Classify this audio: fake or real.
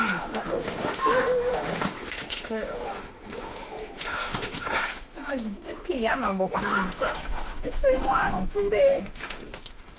fake